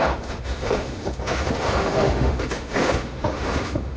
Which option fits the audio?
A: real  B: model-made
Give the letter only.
B